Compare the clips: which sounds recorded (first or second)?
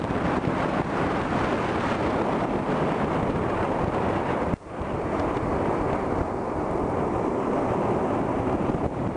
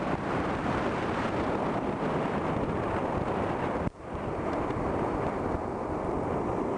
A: first